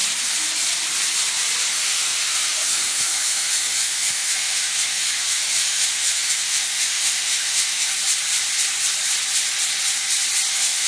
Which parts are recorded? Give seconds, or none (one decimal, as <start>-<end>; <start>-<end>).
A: 0.0-1.7; 7.9-10.5